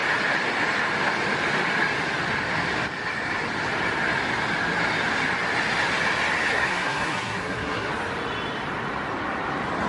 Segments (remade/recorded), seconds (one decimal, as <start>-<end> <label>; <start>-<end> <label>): 0.0-6.5 recorded; 6.5-7.9 remade; 7.9-9.9 recorded